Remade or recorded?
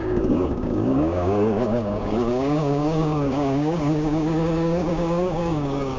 remade